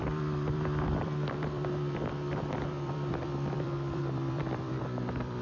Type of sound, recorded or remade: remade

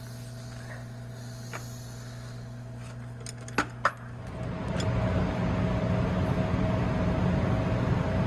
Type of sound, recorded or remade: recorded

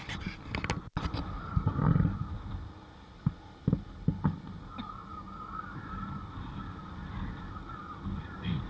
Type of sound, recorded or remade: recorded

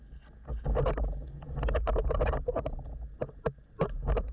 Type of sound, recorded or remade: recorded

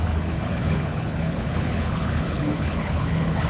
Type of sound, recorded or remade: remade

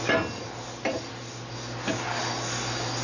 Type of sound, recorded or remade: recorded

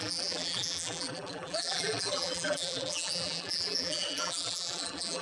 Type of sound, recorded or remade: remade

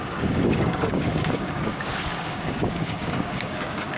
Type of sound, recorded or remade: remade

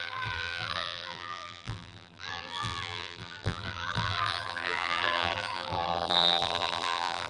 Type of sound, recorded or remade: remade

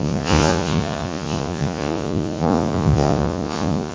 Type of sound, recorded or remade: remade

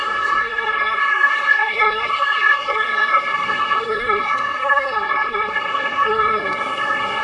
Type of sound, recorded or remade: remade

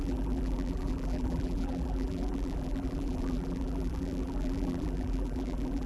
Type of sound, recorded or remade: remade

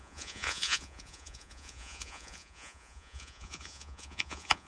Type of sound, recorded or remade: remade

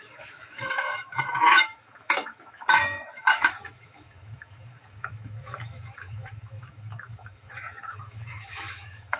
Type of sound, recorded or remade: remade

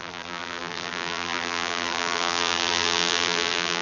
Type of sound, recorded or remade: remade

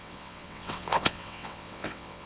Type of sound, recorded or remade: remade